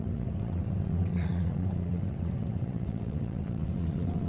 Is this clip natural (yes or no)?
no